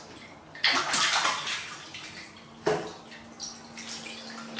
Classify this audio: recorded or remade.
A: recorded